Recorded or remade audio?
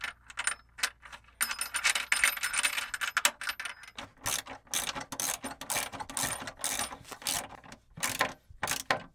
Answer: recorded